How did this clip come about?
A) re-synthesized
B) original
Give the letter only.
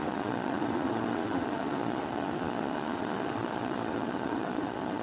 A